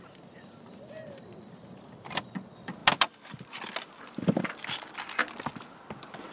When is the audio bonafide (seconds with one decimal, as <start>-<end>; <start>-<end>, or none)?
2.8-3.8; 5.2-6.3